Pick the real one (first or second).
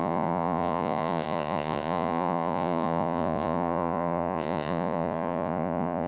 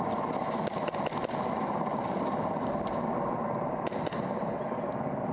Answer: second